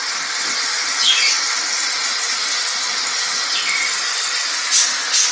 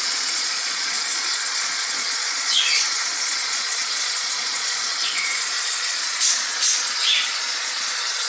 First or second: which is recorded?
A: first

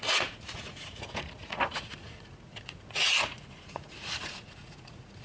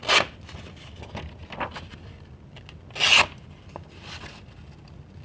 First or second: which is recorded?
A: second